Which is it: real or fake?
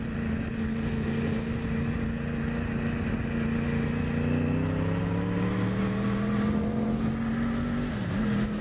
real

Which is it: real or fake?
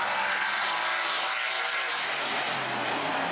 real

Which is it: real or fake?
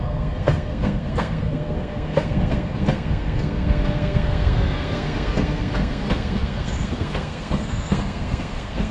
fake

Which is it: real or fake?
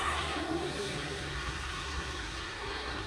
fake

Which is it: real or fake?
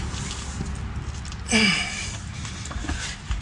real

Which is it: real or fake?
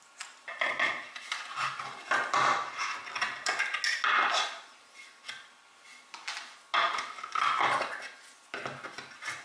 real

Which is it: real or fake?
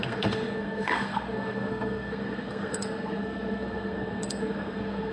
fake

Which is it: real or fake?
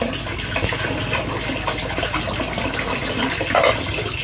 real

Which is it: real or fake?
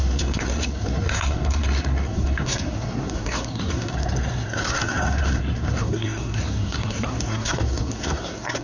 fake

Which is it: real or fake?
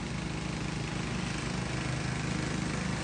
real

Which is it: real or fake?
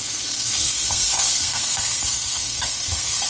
fake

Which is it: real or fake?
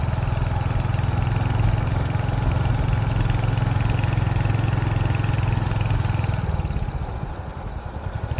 real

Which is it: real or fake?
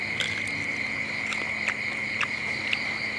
real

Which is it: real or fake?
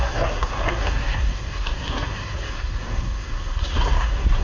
fake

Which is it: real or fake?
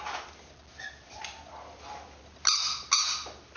real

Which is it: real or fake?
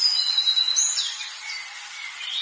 real